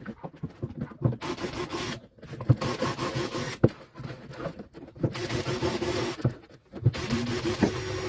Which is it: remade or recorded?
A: recorded